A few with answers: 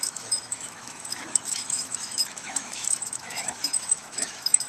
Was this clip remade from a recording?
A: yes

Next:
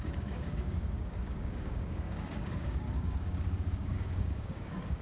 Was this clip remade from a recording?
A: yes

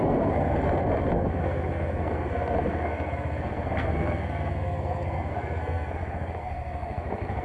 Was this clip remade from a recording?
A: yes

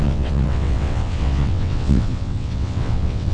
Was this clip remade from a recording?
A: yes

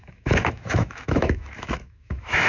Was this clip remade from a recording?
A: yes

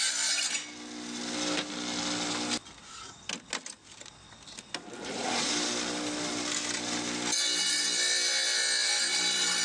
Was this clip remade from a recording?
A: no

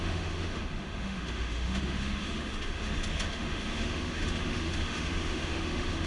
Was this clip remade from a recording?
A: yes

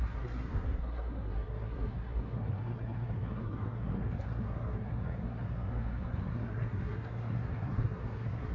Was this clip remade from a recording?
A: yes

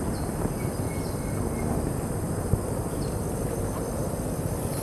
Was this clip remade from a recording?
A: no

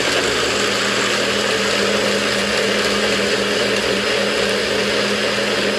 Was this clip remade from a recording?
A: no